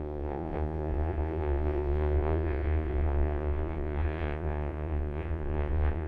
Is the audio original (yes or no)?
no